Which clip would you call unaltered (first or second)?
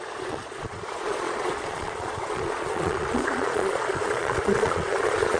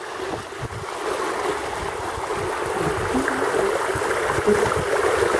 second